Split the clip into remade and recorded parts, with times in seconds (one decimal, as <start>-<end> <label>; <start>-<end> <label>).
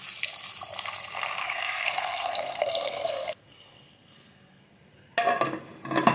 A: 0.0-1.4 recorded; 1.4-4.8 remade; 4.8-6.1 recorded